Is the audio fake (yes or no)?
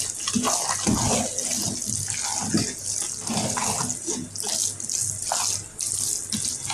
no